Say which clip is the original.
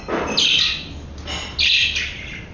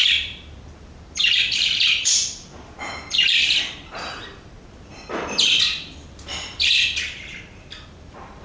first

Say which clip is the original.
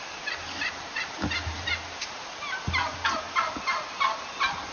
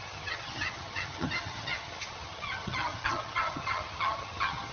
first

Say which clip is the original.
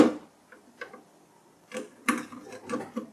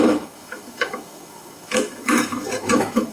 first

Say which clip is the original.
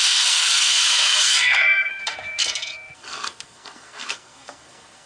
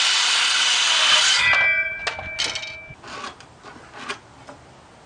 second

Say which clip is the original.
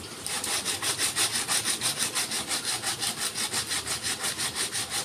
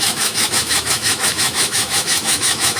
first